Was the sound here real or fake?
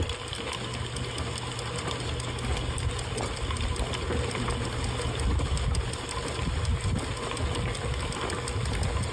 real